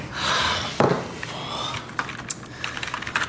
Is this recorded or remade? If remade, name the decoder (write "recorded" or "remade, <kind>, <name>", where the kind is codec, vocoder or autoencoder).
recorded